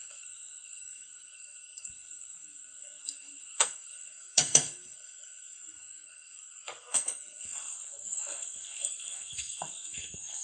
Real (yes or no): no